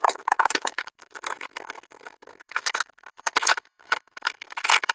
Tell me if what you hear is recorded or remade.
remade